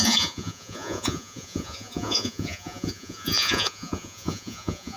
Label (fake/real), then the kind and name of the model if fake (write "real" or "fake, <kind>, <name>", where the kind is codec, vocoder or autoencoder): fake, vocoder, Vocos